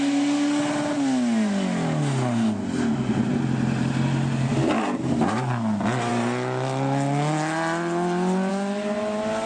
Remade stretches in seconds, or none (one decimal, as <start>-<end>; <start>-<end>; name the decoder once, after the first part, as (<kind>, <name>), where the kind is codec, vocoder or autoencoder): none

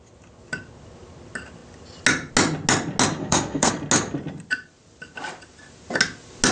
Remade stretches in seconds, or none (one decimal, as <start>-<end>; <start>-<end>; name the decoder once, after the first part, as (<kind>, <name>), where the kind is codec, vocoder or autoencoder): 3.2-3.7 (codec, SNAC)

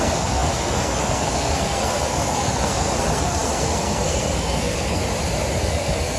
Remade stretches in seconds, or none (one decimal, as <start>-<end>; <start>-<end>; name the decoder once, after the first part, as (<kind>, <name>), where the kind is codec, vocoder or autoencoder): 0.0-5.0 (codec, SNAC); 5.6-6.2

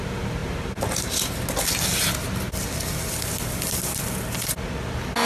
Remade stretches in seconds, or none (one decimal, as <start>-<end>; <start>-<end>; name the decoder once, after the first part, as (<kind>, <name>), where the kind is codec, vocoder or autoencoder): none

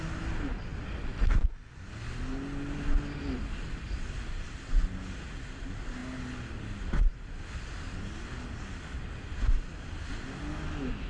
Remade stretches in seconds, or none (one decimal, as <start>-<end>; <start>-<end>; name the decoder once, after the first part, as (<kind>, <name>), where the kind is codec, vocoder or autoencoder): none

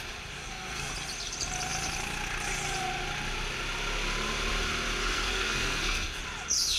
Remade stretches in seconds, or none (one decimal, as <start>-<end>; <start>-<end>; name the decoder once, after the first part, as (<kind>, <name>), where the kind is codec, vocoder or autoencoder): 0.4-0.9 (codec, SNAC); 5.0-6.2

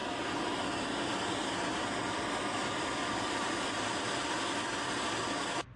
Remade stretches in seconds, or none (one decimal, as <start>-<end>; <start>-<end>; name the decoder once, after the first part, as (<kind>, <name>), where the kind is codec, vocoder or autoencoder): none